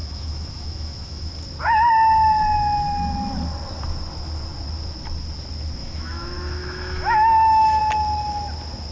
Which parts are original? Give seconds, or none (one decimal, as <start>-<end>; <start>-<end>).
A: 1.3-5.8; 7.8-8.9